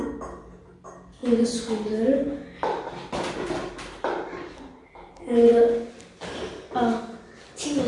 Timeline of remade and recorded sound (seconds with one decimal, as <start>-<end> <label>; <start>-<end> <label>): 0.0-7.9 recorded

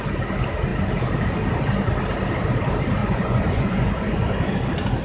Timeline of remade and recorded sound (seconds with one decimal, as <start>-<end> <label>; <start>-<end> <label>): 0.0-3.0 recorded; 3.0-4.3 remade; 4.3-5.0 recorded